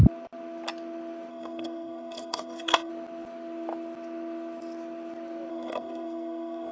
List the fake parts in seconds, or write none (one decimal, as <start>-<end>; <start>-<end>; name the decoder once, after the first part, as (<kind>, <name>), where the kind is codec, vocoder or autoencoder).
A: 1.3-2.9 (codec, SNAC); 5.5-6.7

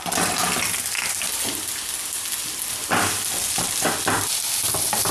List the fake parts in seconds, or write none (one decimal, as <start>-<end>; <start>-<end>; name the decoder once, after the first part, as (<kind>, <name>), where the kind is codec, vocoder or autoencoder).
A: none

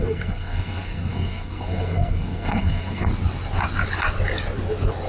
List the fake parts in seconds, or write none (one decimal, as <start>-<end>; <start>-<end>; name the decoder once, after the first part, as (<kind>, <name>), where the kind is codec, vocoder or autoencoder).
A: 0.0-3.1 (codec, SNAC)